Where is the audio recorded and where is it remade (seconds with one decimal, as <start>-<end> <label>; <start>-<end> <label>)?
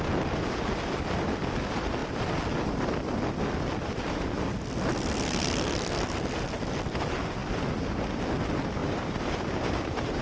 0.0-8.8 recorded; 8.8-10.2 remade